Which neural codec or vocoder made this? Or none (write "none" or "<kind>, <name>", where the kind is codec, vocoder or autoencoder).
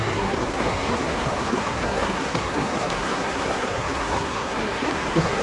codec, SNAC